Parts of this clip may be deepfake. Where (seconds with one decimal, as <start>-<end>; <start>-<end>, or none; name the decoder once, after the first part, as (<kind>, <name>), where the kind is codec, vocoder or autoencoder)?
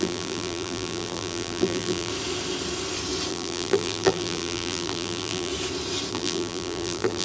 0.0-2.1 (vocoder, BigVGAN v2); 3.3-5.5; 6.1-7.2